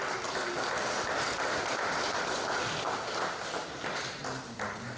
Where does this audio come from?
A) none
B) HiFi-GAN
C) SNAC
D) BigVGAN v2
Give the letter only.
A